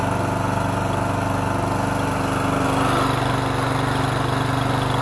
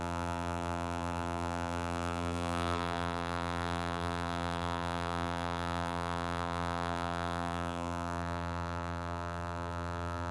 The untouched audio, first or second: first